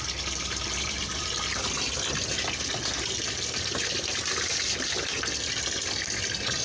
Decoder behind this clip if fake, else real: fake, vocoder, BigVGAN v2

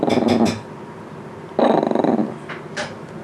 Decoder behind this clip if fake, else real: real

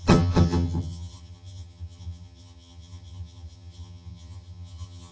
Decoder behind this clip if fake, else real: fake, vocoder, HiFi-GAN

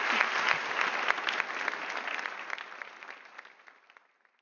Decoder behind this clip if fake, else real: real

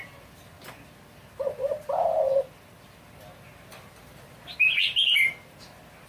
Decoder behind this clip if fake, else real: real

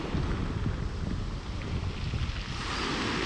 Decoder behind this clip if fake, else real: real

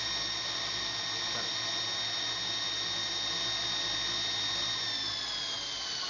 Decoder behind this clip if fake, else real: real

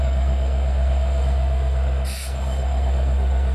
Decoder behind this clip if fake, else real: fake, codec, SNAC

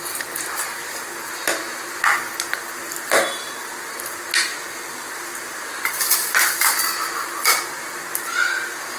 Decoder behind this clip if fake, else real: real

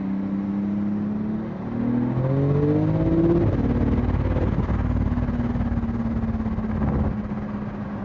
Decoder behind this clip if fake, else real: real